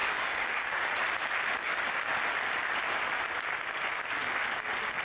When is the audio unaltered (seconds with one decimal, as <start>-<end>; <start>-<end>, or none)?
0.9-1.6; 2.1-5.0